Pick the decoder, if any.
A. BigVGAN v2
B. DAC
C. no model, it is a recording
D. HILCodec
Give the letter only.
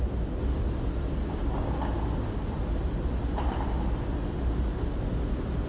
C